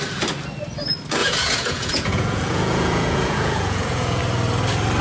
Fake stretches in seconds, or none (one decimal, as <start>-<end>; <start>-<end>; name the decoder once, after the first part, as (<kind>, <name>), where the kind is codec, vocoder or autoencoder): 1.2-4.2 (vocoder, Vocos)